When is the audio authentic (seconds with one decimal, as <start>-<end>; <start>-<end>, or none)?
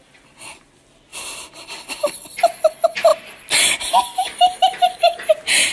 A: 0.0-1.1; 2.7-3.1; 4.7-5.7